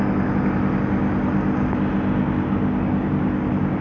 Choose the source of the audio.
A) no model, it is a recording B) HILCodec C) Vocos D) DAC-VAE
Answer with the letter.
A